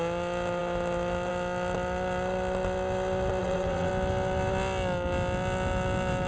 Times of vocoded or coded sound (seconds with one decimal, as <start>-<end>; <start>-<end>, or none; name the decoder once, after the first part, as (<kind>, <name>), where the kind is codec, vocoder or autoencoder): 3.4-3.9 (vocoder, WaveNeXt)